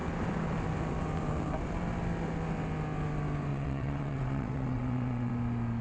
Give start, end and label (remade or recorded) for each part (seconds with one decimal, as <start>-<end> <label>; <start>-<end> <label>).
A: 0.0-3.5 recorded; 3.5-5.3 remade; 5.3-5.8 recorded